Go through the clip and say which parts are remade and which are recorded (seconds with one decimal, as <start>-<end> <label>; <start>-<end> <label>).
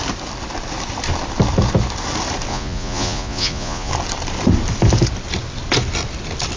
0.0-2.5 recorded; 2.5-3.9 remade; 3.9-6.6 recorded